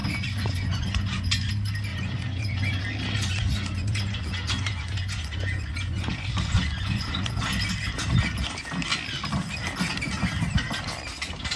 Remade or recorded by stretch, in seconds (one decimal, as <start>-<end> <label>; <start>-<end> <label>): 0.0-1.5 remade; 1.5-1.9 recorded; 1.9-2.8 remade; 2.8-3.2 recorded; 3.2-7.4 remade; 7.4-11.6 recorded